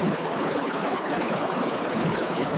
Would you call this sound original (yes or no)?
no